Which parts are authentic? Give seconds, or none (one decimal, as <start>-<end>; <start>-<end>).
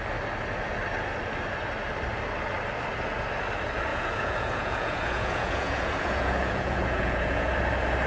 0.0-3.9; 7.5-8.1